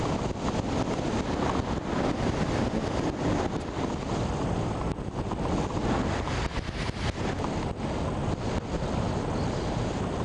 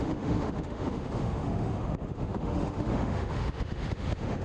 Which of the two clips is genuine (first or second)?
first